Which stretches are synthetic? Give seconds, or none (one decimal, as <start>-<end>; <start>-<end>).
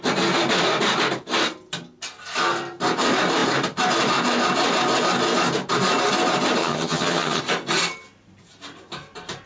6.6-7.4